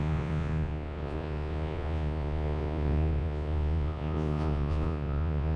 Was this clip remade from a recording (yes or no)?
yes